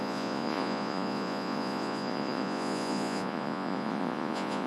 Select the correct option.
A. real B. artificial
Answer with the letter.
B